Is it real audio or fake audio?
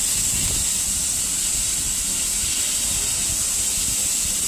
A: real